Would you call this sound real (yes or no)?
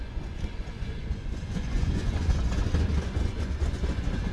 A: no